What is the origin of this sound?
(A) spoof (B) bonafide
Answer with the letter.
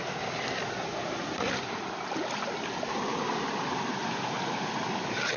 B